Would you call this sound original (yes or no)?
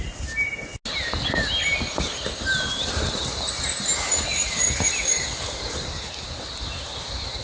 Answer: yes